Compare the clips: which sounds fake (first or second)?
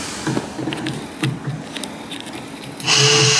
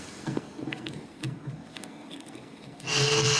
second